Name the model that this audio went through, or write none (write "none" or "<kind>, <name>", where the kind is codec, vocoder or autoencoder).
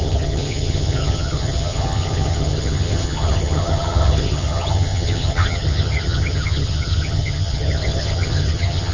vocoder, HiFi-GAN